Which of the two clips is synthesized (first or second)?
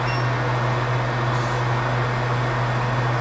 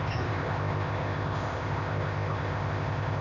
second